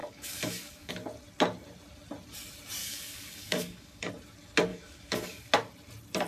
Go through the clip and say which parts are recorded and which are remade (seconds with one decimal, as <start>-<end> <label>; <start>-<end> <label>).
0.0-0.9 remade; 0.9-2.8 recorded; 2.8-4.1 remade; 4.1-4.7 recorded; 4.7-5.5 remade; 5.5-6.3 recorded